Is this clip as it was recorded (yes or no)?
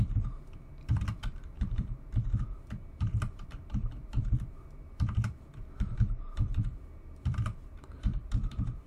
no